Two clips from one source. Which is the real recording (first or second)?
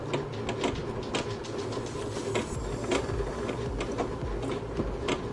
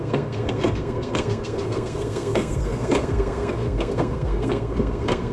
first